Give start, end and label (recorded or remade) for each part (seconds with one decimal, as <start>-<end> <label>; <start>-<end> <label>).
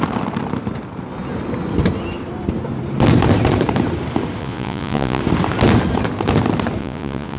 0.0-4.4 recorded; 4.4-5.2 remade; 5.2-6.8 recorded; 6.8-7.4 remade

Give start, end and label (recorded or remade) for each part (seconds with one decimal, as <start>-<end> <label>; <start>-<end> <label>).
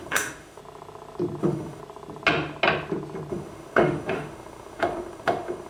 0.0-0.6 remade; 0.6-1.4 recorded; 1.4-1.8 remade; 1.8-3.3 recorded; 3.3-5.7 remade